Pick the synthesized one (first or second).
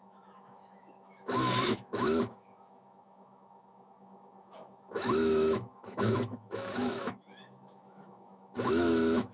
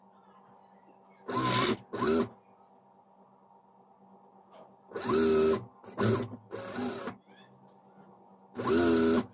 first